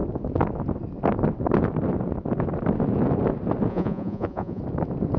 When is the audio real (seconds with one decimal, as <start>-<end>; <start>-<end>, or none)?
0.0-3.7; 4.6-5.2